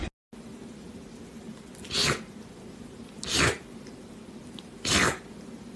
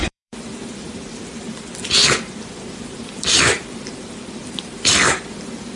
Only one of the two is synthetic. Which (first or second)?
second